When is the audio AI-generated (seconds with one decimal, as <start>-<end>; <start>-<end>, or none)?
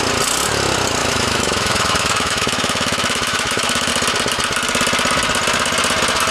1.0-3.9